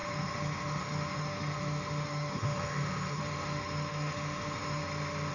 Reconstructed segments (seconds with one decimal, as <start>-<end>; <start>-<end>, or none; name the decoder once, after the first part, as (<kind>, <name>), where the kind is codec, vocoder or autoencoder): 0.0-4.8 (autoencoder, DAC-VAE)